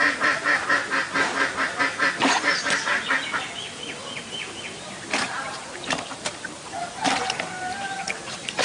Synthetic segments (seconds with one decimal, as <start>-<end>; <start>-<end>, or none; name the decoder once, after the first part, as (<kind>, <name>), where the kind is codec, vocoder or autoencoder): 0.0-0.8 (vocoder, BigVGAN v2); 4.2-8.6